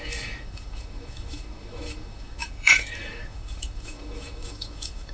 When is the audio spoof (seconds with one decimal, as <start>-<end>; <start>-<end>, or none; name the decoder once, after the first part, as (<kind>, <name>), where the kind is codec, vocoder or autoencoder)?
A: 0.0-5.1 (autoencoder, DAC-VAE)